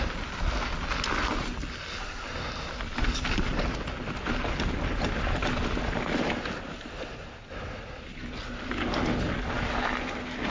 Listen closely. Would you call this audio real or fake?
real